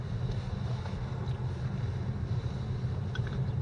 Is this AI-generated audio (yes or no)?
no